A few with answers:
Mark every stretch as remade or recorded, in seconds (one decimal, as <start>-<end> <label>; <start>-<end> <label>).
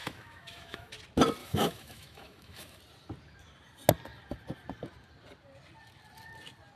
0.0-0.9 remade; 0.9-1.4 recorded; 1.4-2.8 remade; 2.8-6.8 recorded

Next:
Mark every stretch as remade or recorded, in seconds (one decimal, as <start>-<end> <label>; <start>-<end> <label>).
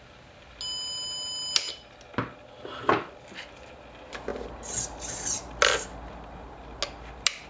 0.0-7.5 recorded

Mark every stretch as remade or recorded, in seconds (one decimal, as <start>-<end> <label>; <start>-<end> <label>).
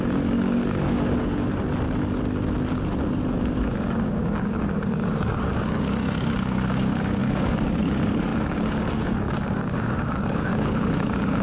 0.0-1.5 remade; 1.5-3.3 recorded; 3.3-11.4 remade